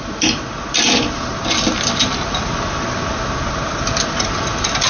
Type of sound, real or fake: real